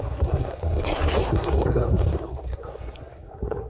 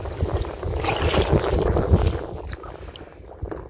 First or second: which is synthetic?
first